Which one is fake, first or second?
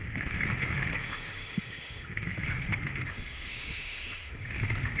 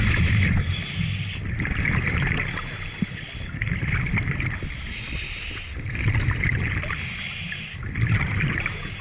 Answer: first